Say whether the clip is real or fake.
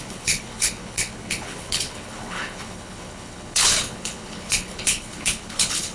fake